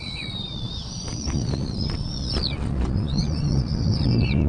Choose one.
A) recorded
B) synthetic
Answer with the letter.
B